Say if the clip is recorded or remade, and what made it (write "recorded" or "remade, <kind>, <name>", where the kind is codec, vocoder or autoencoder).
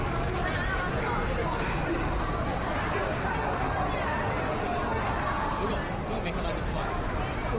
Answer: recorded